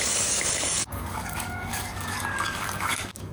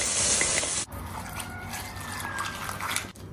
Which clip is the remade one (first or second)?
first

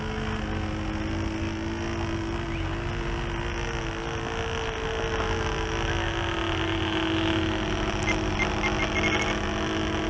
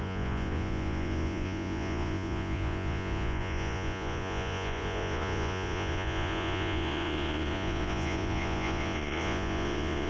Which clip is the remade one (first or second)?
second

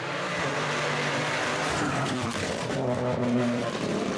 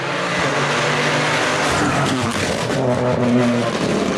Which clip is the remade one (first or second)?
first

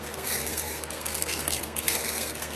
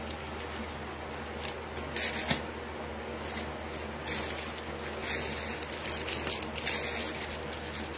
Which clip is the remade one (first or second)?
first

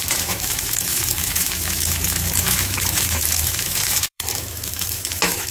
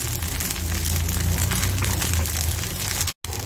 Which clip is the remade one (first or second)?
first